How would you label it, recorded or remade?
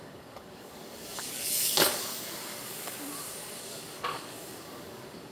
remade